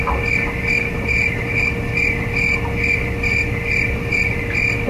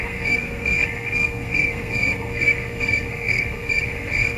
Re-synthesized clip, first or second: second